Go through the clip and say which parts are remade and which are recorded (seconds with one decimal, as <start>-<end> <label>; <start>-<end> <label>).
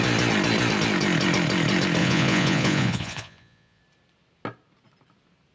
0.0-2.0 recorded; 2.0-3.8 remade; 3.8-5.5 recorded